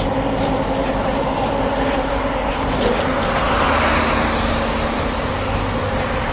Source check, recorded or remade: recorded